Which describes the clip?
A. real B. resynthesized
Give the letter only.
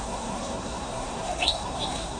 B